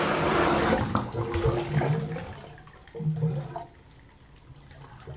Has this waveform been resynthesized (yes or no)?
no